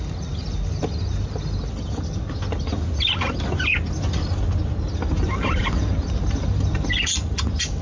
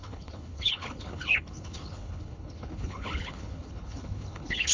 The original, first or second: first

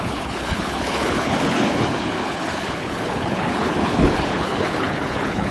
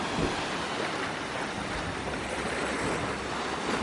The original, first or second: second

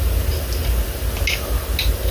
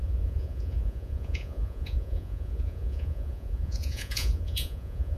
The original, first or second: first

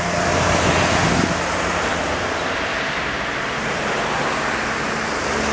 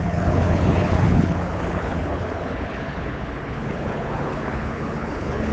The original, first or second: first